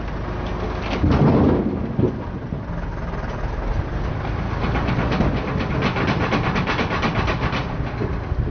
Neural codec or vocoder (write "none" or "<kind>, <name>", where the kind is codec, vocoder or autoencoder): none